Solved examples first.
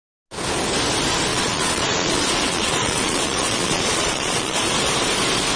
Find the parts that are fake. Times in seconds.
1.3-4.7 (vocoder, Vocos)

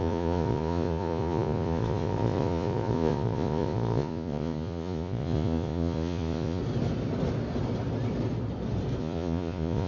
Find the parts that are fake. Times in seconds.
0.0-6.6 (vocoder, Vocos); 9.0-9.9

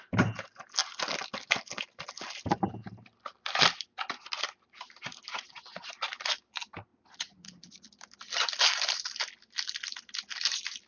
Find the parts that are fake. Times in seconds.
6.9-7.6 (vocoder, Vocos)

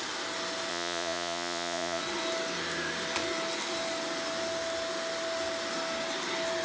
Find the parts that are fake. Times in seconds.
0.7-2.0 (vocoder, Vocos)